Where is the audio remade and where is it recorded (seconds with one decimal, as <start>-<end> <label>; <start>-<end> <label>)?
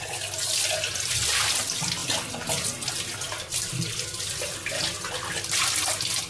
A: 0.0-6.3 recorded